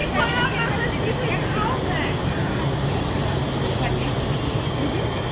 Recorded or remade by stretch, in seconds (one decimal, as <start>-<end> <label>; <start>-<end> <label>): 0.0-5.3 recorded